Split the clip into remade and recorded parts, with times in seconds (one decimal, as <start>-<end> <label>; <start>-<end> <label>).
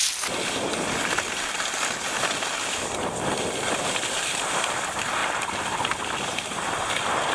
0.0-4.4 remade; 4.4-7.3 recorded